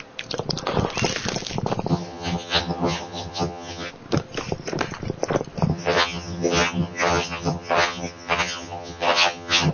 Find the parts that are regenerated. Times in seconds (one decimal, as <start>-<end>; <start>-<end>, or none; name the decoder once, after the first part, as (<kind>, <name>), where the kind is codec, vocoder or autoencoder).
1.9-3.9 (vocoder, HiFi-GAN); 5.7-9.7